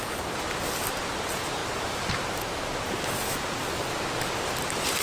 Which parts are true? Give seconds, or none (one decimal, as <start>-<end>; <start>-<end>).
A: 0.0-5.0

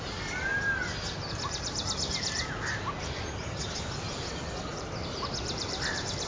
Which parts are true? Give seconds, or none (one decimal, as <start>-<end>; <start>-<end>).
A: 0.0-4.7

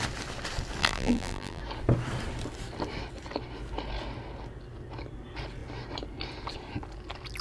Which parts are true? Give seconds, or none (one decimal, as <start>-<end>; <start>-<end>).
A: 0.0-0.8; 1.6-7.4

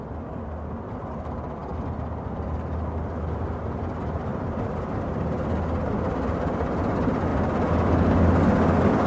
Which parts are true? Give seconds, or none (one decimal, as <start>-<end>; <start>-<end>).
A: 0.0-1.6; 2.6-4.3; 5.8-9.1

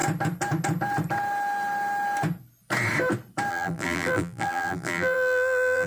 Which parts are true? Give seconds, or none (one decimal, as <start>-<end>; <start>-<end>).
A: 0.0-3.5

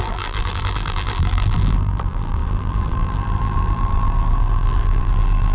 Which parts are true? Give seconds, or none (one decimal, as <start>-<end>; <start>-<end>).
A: none

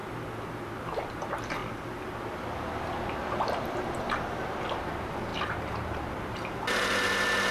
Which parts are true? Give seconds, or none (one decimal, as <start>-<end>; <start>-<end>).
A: 0.0-0.8; 1.6-3.2